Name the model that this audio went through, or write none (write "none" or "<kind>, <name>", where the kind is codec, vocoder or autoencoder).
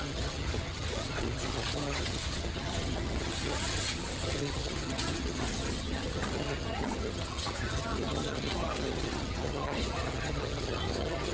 vocoder, HiFi-GAN